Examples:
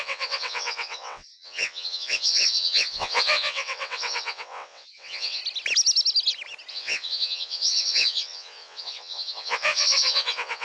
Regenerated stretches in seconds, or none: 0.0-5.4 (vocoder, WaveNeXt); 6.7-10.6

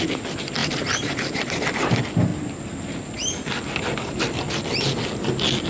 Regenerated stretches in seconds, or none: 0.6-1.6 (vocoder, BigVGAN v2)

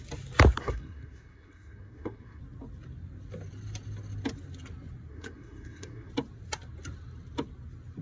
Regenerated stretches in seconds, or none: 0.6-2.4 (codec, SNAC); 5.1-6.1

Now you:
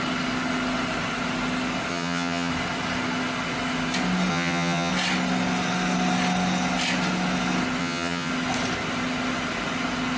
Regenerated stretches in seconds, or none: 1.9-2.5 (vocoder, HiFi-GAN); 4.3-4.9; 7.8-8.3

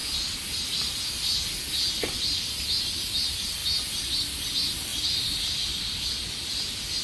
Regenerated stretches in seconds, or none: 2.8-7.0 (vocoder, BigVGAN v2)

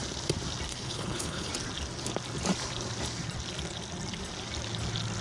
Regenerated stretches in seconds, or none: 0.7-1.5 (codec, HILCodec)